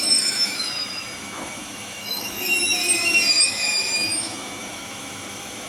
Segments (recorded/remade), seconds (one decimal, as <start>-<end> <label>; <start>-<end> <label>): 0.0-2.8 remade; 2.8-3.3 recorded; 3.3-5.7 remade